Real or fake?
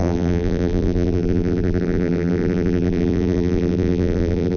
fake